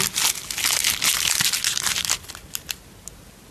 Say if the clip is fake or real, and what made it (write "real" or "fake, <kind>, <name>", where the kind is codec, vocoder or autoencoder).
real